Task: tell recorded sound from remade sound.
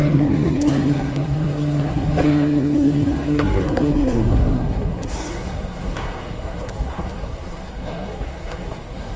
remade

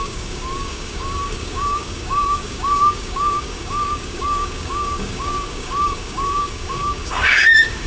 remade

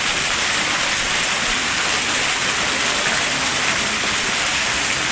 recorded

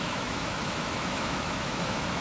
remade